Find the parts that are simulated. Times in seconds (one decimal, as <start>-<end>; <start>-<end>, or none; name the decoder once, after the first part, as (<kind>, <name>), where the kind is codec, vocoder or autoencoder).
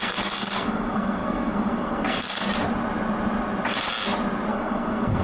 0.0-2.5 (codec, SNAC); 4.5-5.2